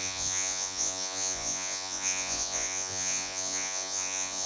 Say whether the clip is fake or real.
fake